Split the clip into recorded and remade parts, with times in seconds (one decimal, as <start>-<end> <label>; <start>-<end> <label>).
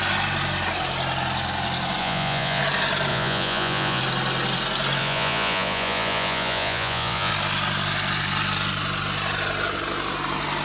0.0-2.0 recorded; 2.0-2.6 remade; 2.6-3.1 recorded; 3.1-4.0 remade; 4.0-5.0 recorded; 5.0-7.3 remade; 7.3-10.6 recorded